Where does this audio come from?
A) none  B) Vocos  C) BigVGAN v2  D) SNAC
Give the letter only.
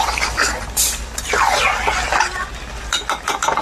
A